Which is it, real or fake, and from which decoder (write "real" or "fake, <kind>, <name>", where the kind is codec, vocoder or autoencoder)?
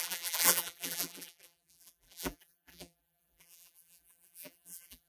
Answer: fake, vocoder, BigVGAN v2